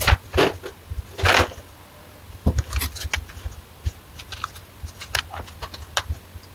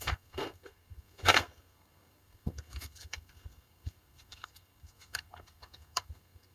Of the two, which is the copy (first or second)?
second